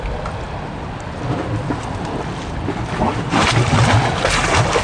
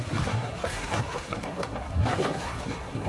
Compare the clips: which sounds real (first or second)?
first